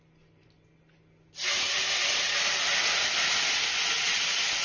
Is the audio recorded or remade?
recorded